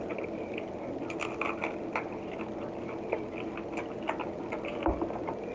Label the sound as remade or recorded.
recorded